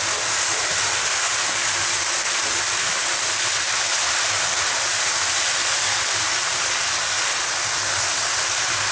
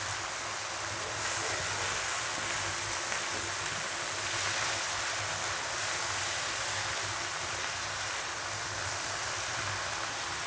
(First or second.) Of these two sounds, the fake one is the first